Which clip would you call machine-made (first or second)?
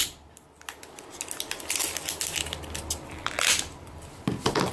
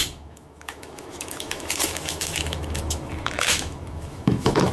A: second